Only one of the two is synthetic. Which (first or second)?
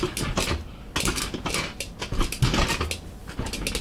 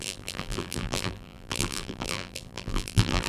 second